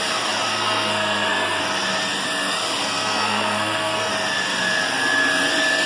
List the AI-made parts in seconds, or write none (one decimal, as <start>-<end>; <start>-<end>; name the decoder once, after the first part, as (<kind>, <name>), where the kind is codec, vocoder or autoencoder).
0.5-1.6 (codec, SNAC); 2.8-4.1